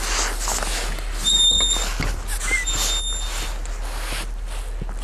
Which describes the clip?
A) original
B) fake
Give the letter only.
A